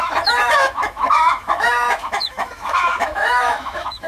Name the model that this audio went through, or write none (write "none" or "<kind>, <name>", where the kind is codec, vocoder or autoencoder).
autoencoder, DAC-VAE